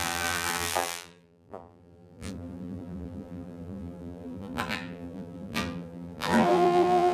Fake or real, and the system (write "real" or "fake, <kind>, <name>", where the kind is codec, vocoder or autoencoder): fake, vocoder, BigVGAN v2